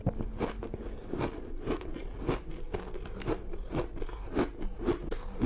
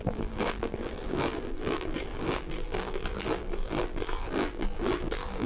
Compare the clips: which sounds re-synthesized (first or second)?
second